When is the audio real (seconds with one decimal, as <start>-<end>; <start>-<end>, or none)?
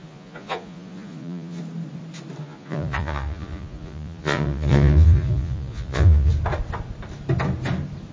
1.6-2.4; 6.3-8.1